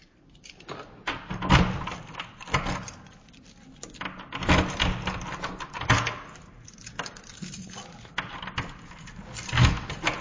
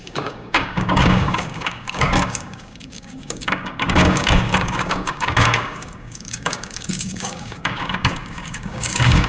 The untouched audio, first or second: first